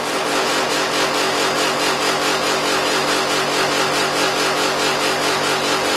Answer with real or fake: real